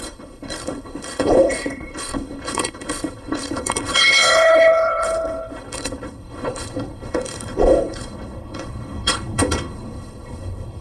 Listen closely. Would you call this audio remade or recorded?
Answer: remade